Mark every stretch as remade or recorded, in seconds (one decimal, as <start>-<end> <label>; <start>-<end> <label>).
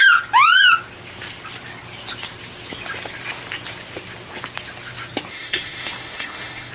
0.0-5.3 recorded; 5.3-6.7 remade